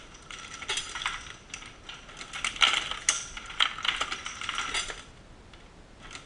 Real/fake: real